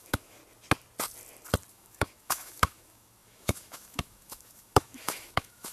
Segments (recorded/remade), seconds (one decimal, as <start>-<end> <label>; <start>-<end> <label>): 0.0-0.4 remade; 0.4-1.7 recorded; 1.7-5.7 remade